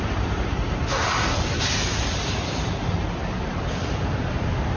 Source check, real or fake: fake